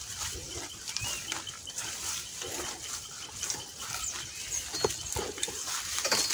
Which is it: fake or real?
real